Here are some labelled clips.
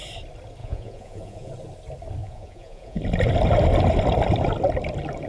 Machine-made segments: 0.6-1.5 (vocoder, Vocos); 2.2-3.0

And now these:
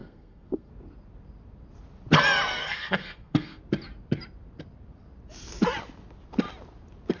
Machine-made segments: 0.0-0.7 (codec, SNAC); 2.6-3.6

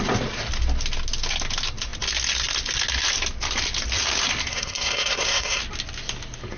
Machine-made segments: 4.5-5.6 (codec, SNAC)

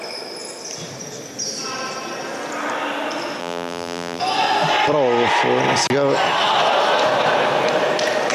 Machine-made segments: 3.4-4.2 (vocoder, BigVGAN v2)

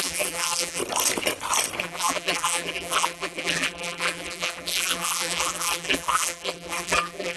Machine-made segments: 0.0-0.8 (vocoder, BigVGAN v2); 1.8-7.4

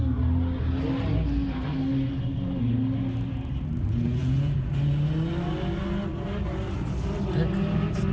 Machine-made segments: 4.2-4.7 (vocoder, Vocos)

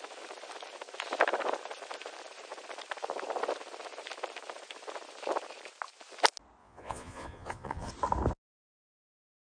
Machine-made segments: 6.6-7.9 (vocoder, Vocos)